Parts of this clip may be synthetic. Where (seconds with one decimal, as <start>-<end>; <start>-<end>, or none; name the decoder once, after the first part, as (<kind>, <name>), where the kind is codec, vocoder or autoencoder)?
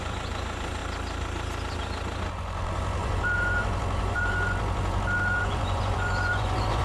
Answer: 0.0-0.8 (vocoder, Vocos); 2.3-6.8